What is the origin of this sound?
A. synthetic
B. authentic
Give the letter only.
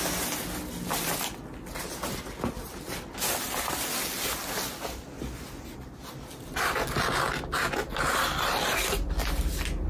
B